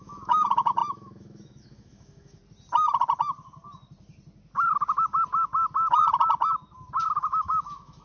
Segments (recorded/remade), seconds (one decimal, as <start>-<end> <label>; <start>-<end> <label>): 0.0-2.4 remade; 2.4-7.2 recorded; 7.2-8.0 remade